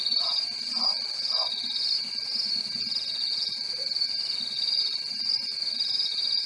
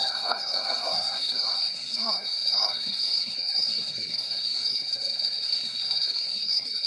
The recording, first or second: first